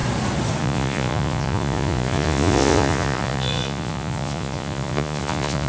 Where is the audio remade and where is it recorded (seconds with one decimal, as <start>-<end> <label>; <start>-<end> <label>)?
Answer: 0.0-0.6 recorded; 0.6-5.7 remade